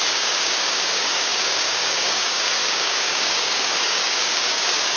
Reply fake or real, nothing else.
fake